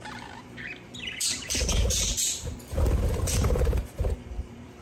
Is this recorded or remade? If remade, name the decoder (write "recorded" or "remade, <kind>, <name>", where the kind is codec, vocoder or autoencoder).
remade, vocoder, BigVGAN v2